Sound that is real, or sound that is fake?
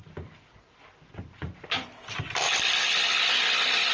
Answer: real